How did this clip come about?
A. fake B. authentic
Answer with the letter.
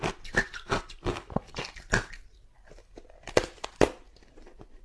B